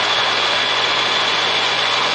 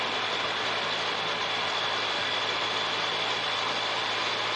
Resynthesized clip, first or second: first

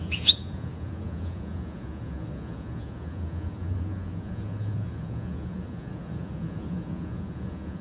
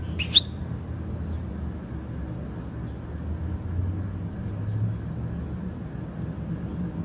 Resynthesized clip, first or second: first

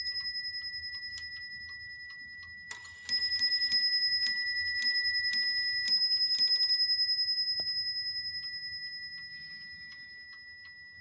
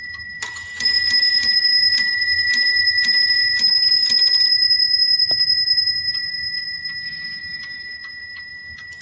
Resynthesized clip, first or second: second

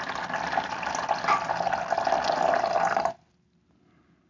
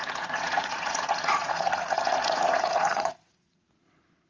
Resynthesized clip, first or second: second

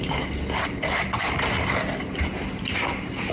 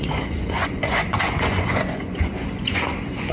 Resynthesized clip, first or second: second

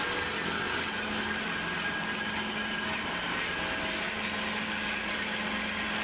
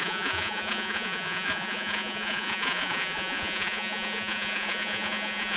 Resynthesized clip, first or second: second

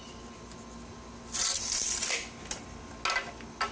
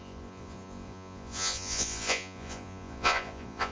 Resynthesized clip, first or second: second